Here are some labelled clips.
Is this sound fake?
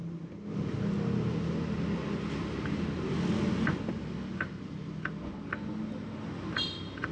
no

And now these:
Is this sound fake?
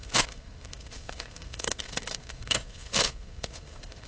yes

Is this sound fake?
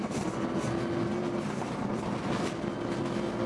no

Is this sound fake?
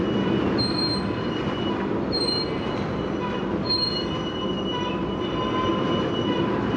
no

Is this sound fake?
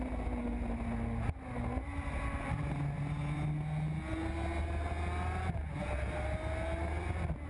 no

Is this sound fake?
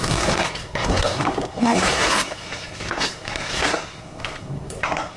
yes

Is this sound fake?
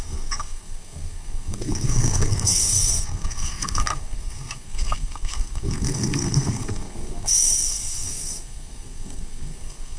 yes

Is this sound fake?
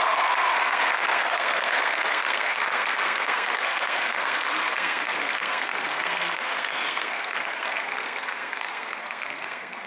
yes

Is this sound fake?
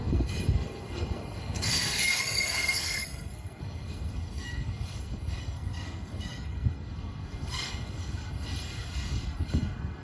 yes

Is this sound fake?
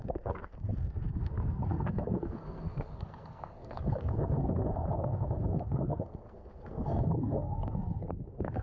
yes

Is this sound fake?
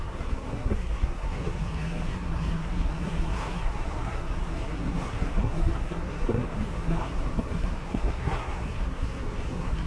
yes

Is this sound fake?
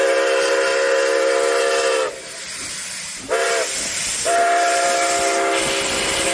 no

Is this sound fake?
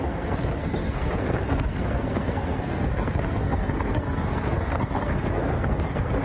yes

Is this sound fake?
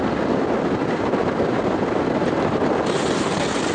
no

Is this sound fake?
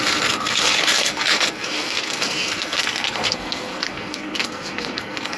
yes